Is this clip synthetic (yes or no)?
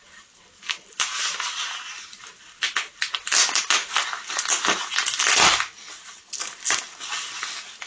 no